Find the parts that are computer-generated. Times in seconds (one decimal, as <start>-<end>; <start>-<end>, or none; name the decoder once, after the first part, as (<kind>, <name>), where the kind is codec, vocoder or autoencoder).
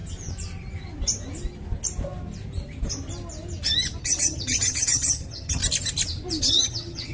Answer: 4.0-5.6 (vocoder, HiFi-GAN); 6.4-7.1